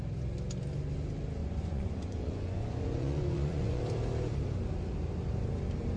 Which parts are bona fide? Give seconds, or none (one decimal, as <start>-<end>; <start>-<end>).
0.0-1.4; 3.8-6.0